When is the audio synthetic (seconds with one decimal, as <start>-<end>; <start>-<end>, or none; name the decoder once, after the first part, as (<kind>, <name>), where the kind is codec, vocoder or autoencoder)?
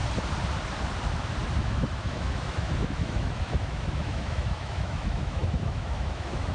1.6-6.5 (autoencoder, DAC-VAE)